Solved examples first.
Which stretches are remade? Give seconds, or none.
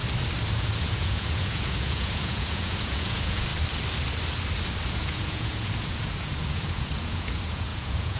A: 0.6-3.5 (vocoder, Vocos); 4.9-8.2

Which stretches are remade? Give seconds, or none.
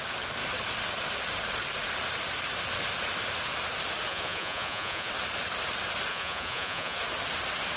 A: 4.1-5.1 (vocoder, Vocos); 6.1-7.0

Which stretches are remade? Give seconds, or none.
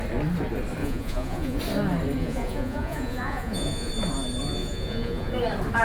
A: 0.8-1.6 (vocoder, Vocos); 2.2-3.9; 4.6-5.3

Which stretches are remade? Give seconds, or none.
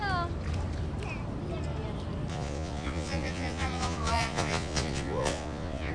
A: 2.3-5.9 (vocoder, Vocos)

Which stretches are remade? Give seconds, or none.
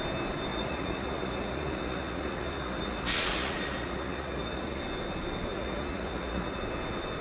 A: 0.5-4.8 (vocoder, Vocos); 5.5-6.6